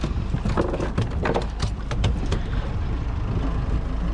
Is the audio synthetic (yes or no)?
no